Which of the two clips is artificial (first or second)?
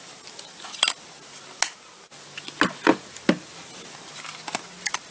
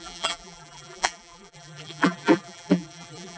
second